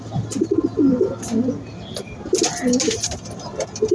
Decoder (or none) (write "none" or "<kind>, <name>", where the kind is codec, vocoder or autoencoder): none